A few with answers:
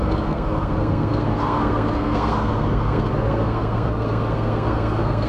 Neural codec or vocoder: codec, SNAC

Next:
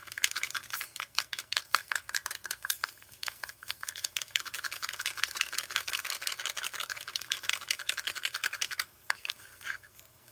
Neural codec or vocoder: codec, SNAC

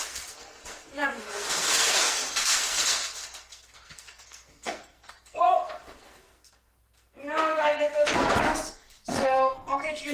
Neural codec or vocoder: codec, SNAC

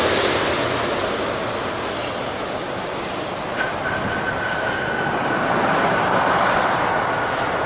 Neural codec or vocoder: none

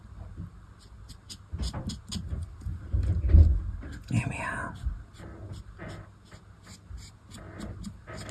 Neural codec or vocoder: none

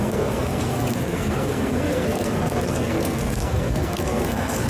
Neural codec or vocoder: codec, SNAC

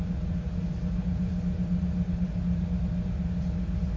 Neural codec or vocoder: none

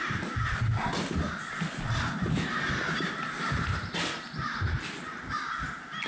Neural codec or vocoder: none